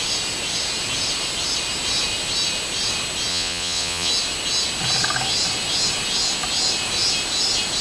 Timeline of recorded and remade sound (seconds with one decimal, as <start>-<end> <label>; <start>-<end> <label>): 0.0-3.3 recorded; 3.3-4.1 remade; 4.1-7.8 recorded